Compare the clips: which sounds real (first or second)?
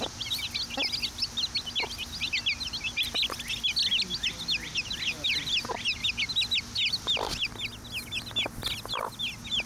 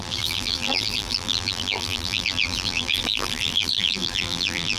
first